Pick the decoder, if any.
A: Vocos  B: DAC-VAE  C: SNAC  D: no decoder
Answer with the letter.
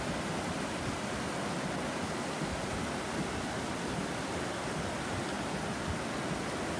D